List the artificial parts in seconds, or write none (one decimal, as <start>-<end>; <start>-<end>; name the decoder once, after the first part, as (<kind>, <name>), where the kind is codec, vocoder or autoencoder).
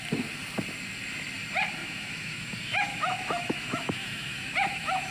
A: 1.8-5.1 (autoencoder, DAC-VAE)